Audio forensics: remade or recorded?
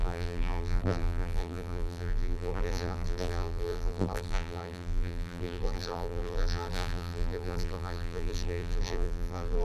remade